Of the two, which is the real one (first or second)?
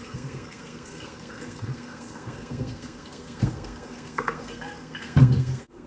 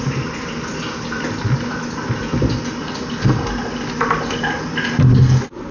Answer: second